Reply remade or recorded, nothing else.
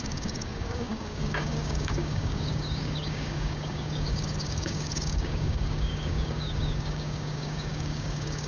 remade